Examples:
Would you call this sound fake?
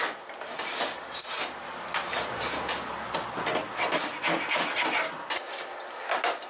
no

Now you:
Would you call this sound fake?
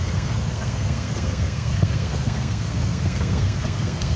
yes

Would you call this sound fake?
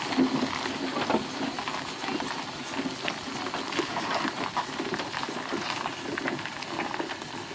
no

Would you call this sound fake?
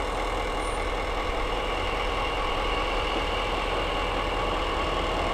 no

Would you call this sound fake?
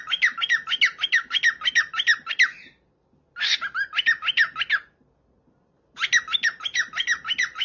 no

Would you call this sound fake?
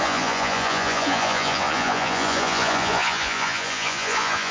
yes